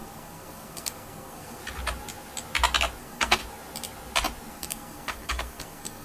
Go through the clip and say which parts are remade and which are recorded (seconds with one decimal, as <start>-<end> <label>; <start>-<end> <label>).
0.0-1.6 remade; 1.6-3.0 recorded; 3.0-3.4 remade; 3.4-4.5 recorded; 4.5-6.0 remade